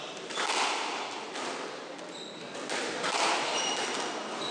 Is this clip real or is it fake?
real